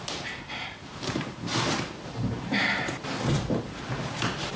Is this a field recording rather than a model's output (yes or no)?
no